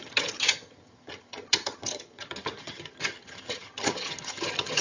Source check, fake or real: fake